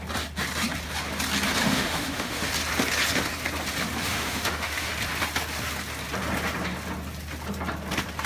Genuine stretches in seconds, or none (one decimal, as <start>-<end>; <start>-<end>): 0.0-1.6; 2.5-4.0; 4.9-8.3